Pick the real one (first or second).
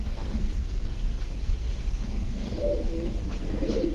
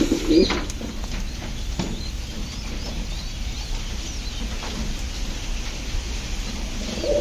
second